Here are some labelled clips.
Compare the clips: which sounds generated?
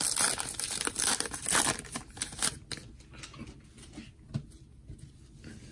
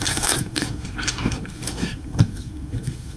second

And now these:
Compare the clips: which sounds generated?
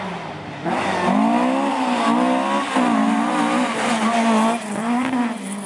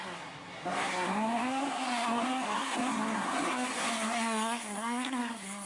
second